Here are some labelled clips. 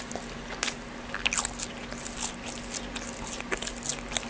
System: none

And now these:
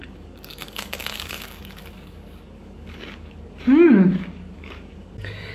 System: codec, DAC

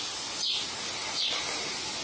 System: none